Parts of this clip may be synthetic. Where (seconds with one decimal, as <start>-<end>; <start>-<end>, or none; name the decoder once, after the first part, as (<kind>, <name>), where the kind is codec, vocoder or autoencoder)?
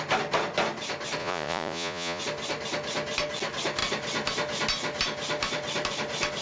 1.2-2.2 (vocoder, Vocos)